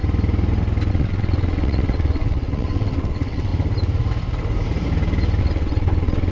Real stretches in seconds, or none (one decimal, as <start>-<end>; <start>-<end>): 0.0-0.9; 3.5-5.4